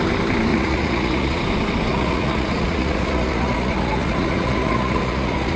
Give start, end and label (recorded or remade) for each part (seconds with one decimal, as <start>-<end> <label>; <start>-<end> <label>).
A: 0.0-0.5 recorded; 0.5-1.4 remade; 1.4-1.9 recorded; 1.9-5.6 remade